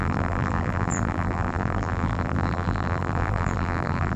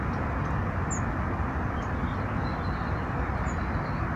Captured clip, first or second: second